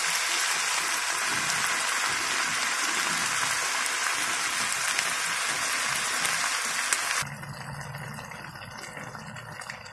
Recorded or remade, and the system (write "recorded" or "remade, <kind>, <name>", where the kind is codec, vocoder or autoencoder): recorded